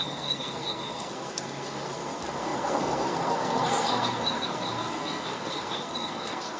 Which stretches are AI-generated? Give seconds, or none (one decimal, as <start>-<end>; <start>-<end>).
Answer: 0.0-6.6